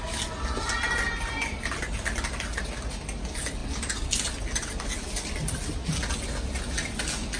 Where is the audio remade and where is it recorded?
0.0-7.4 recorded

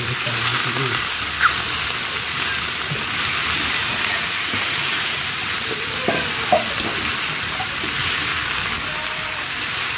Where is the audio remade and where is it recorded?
0.0-3.8 recorded; 3.8-5.2 remade; 5.2-10.0 recorded

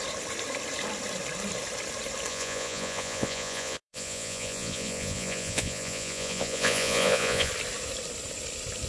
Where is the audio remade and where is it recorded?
0.0-2.3 recorded; 2.3-7.5 remade; 7.5-8.9 recorded